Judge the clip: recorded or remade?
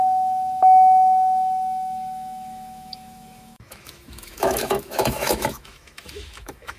remade